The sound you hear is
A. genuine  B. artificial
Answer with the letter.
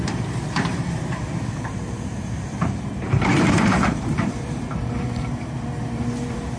B